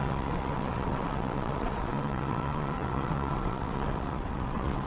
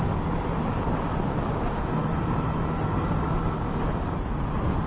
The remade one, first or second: first